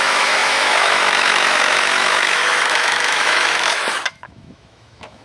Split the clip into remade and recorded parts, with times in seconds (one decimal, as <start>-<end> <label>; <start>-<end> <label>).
0.0-5.2 remade